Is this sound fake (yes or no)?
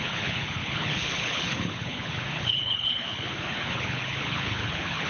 yes